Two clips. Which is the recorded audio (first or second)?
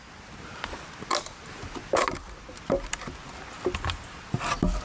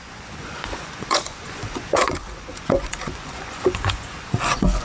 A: first